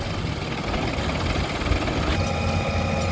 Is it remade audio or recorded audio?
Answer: recorded